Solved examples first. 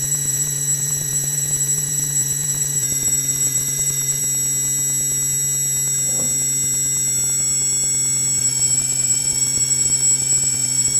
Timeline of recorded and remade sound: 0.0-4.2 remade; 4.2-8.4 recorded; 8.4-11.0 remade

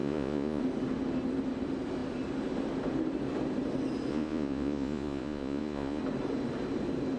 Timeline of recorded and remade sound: 0.0-0.6 remade; 0.6-4.1 recorded; 4.1-6.0 remade; 6.0-7.2 recorded

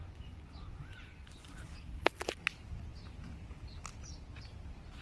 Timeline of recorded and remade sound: 0.0-1.6 remade; 1.6-5.0 recorded